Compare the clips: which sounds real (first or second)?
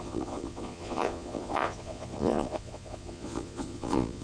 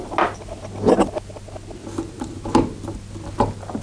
second